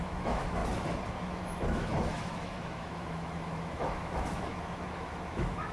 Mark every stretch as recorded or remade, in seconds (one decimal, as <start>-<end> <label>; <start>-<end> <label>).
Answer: 0.0-0.6 remade; 0.6-1.2 recorded; 1.2-5.7 remade